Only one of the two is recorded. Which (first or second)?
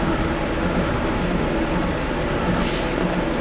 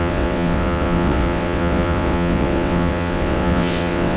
first